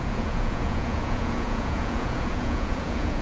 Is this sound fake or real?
fake